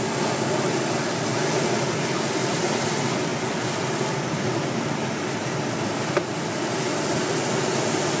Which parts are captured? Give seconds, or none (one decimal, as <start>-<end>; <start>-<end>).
0.0-8.2